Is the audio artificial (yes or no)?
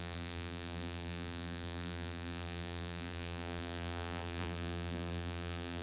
yes